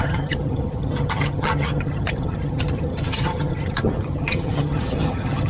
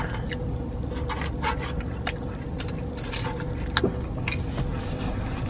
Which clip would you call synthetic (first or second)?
first